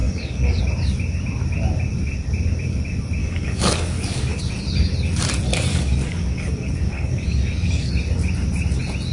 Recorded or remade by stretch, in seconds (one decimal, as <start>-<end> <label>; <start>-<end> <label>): 0.0-0.6 remade; 0.6-3.2 recorded; 3.2-4.4 remade; 4.4-5.7 recorded; 5.7-7.9 remade; 7.9-9.1 recorded